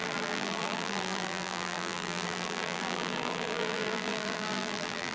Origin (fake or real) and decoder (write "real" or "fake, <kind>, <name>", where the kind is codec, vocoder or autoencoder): fake, vocoder, BigVGAN v2